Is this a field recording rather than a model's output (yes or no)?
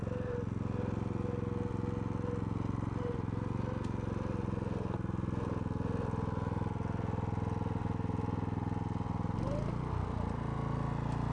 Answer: yes